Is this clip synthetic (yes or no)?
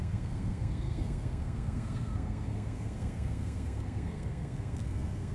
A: yes